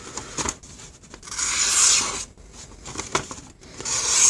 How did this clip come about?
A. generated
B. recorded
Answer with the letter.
B